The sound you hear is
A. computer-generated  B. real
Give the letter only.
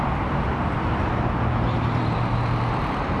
B